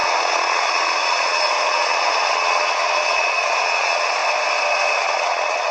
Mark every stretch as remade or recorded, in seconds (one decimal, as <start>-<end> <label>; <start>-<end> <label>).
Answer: 0.0-4.2 remade; 4.2-5.0 recorded; 5.0-5.7 remade